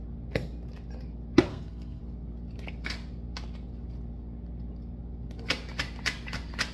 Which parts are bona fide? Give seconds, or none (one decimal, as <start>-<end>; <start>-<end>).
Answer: 0.0-1.5; 2.0-6.7